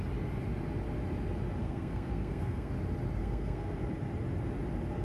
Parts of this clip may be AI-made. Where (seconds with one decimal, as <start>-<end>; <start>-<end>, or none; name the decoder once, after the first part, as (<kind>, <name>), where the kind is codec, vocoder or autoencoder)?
1.6-2.7 (codec, SNAC); 3.2-3.8